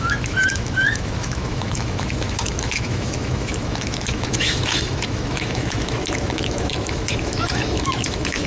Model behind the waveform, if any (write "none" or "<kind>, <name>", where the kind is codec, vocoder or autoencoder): autoencoder, DAC-VAE